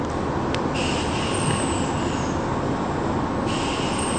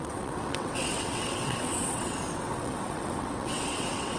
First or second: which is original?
first